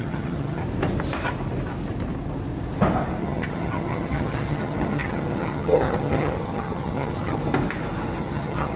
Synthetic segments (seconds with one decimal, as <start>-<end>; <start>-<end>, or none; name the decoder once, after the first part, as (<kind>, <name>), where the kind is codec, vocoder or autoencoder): 0.0-0.6 (vocoder, HiFi-GAN); 3.2-7.4; 8.2-8.8